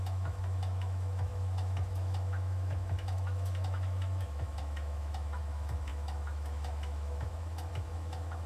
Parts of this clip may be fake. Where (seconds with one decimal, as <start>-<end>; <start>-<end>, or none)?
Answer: 0.0-8.5